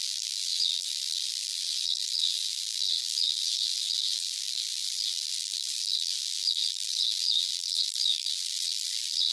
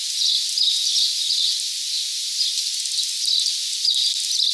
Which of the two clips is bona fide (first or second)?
second